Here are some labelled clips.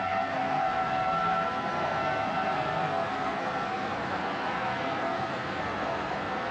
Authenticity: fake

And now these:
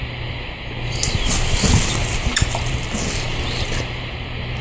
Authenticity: fake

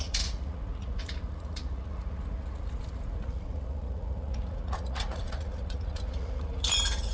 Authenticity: fake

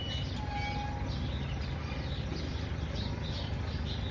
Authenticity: real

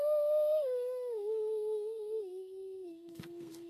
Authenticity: fake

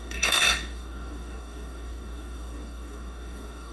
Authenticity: fake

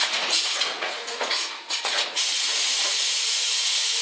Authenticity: fake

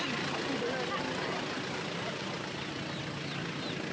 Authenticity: real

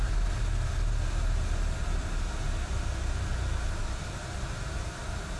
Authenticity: real